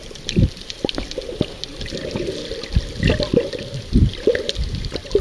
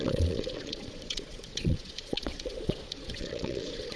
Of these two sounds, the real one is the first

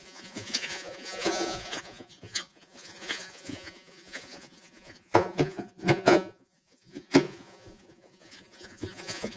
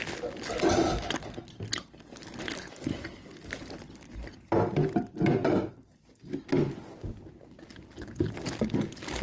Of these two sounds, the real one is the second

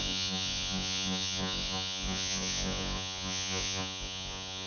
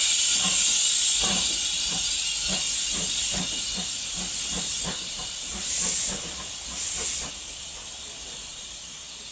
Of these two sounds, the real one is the second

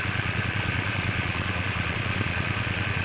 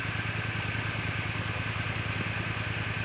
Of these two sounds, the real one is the second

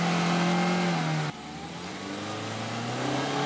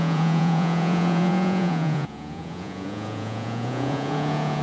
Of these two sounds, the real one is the first